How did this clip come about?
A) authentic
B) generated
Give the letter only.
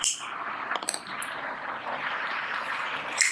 B